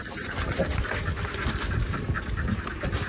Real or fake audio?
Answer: real